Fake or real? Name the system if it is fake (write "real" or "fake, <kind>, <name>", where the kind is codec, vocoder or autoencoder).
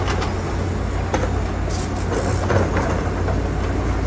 real